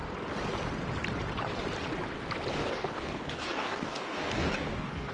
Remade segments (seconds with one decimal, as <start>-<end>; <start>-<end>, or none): 2.5-5.1

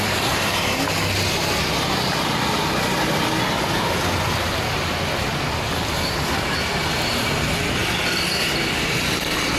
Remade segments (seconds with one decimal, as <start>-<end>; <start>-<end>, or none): none